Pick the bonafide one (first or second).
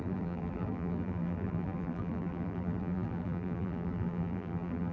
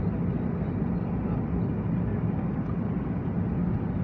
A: second